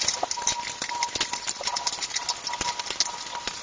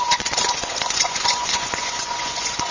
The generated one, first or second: second